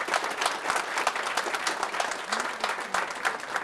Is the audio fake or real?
real